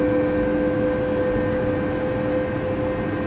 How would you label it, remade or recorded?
recorded